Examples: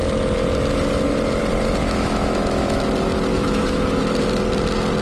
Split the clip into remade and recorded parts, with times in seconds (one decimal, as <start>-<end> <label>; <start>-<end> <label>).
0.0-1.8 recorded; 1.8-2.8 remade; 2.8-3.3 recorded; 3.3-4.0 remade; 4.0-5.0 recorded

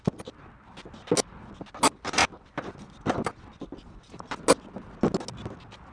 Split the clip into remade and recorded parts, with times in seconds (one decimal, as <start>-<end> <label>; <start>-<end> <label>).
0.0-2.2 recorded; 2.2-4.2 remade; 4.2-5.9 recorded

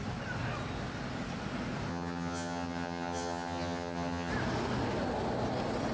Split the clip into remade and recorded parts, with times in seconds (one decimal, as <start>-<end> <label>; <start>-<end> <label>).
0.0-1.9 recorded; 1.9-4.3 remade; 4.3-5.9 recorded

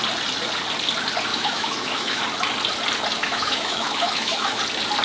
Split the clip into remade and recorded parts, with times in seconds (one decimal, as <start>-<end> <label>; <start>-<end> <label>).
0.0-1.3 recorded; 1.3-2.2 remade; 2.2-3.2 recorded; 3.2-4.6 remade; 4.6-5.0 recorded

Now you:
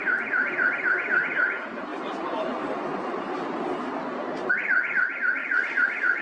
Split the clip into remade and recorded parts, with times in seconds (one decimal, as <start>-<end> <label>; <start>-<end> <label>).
0.0-5.4 recorded; 5.4-6.2 remade

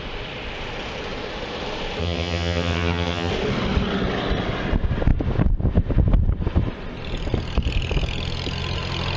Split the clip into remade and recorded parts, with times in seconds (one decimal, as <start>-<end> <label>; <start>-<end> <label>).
0.0-2.0 recorded; 2.0-3.3 remade; 3.3-9.2 recorded